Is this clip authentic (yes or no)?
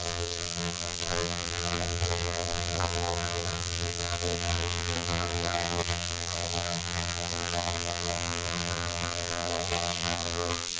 no